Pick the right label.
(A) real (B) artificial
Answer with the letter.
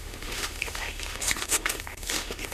B